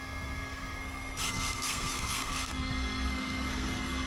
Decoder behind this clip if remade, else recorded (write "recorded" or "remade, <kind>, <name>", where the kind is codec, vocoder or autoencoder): remade, codec, SNAC